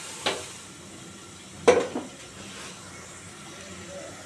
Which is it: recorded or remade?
recorded